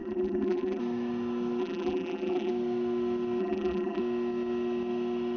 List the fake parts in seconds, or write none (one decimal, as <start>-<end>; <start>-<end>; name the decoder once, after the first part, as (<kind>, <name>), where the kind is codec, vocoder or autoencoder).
0.0-0.8 (vocoder, BigVGAN v2); 1.6-2.5; 3.4-4.0